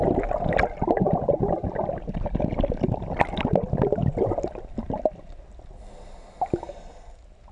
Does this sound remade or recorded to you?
recorded